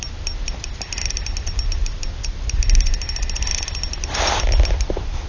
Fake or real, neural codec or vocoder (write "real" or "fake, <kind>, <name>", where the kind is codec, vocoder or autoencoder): real